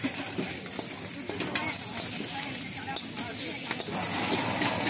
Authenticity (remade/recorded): recorded